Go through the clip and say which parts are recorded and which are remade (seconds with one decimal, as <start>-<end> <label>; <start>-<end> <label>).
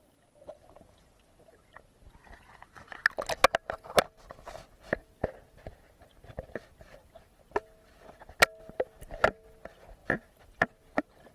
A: 0.0-11.3 recorded